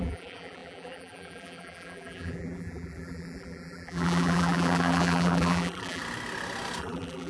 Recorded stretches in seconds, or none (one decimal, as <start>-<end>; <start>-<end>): 6.0-6.8